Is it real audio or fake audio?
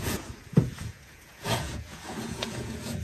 fake